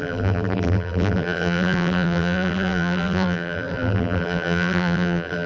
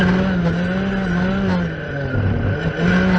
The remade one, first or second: first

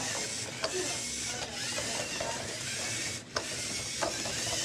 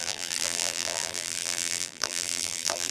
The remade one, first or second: second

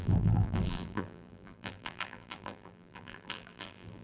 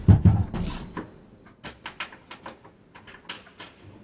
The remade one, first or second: first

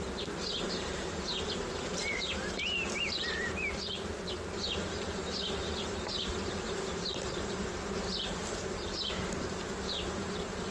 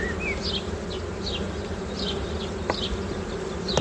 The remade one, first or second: first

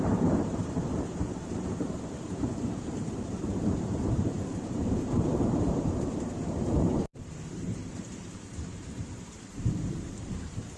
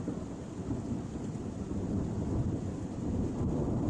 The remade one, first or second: first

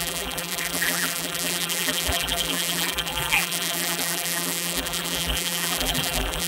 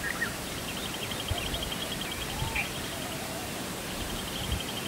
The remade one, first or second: first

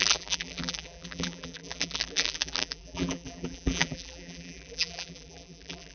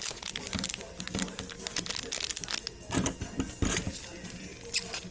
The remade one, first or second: first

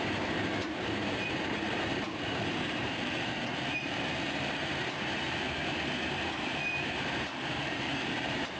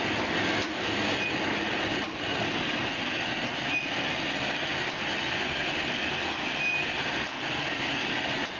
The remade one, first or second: first